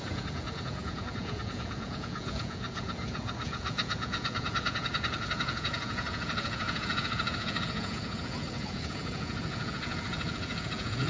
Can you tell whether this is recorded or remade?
remade